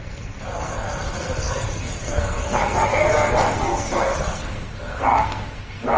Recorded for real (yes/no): no